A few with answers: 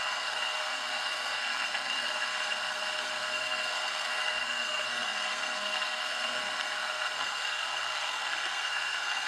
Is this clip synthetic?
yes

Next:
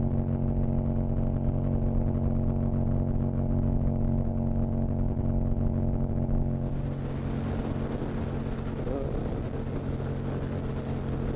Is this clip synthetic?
no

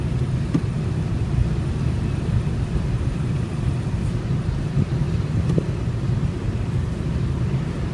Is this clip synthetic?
yes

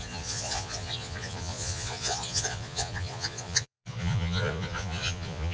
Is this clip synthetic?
yes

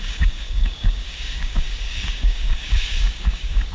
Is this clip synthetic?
yes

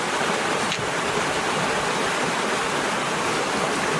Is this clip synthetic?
no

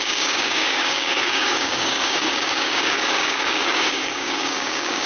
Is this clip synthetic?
yes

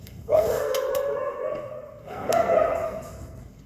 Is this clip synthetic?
yes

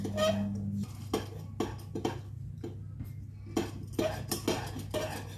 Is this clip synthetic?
no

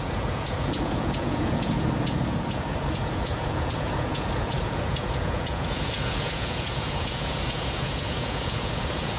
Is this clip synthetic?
yes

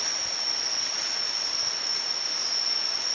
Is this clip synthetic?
no